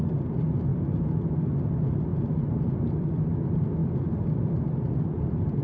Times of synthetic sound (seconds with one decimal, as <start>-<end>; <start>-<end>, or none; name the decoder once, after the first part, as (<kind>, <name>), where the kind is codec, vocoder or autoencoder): 2.1-2.9 (vocoder, BigVGAN v2)